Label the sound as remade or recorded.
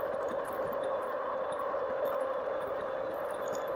recorded